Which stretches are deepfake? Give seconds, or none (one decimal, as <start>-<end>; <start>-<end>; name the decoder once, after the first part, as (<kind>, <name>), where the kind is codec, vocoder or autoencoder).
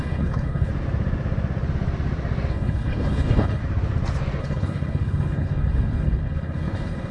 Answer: 0.0-0.7 (codec, HILCodec); 2.5-3.6; 4.4-7.1